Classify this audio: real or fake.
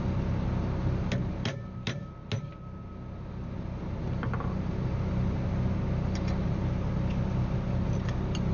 real